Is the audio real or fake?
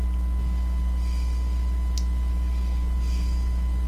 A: real